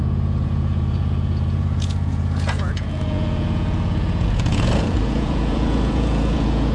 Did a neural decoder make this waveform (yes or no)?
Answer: yes